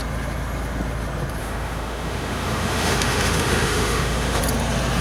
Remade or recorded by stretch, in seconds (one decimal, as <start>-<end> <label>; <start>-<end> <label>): 0.0-1.4 recorded; 1.4-4.4 remade; 4.4-5.0 recorded